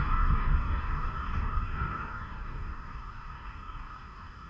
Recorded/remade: remade